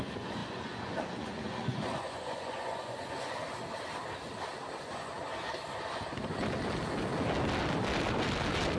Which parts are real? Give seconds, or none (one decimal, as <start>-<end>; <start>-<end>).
3.4-4.8; 5.3-8.8